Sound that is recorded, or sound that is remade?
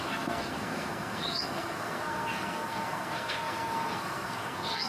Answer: remade